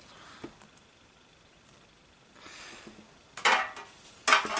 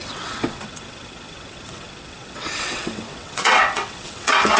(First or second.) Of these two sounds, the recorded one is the first